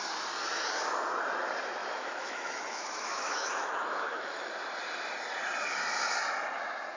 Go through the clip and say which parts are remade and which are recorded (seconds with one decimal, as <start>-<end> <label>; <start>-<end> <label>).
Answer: 0.0-1.8 recorded; 1.8-4.5 remade; 4.5-7.0 recorded